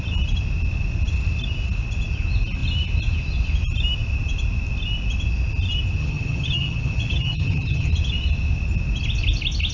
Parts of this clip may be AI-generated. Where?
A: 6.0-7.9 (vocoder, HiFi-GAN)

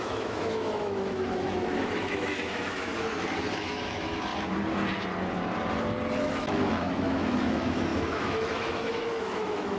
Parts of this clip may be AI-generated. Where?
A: 0.0-2.9 (autoencoder, DAC-VAE); 3.5-4.3; 6.2-9.8